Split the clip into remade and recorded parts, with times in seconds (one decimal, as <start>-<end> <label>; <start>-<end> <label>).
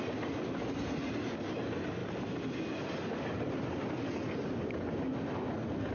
0.0-5.9 recorded